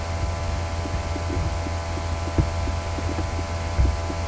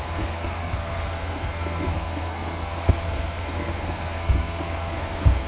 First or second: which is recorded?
first